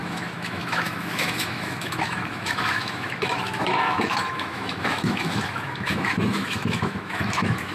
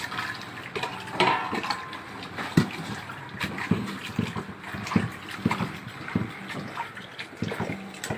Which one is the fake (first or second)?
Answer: first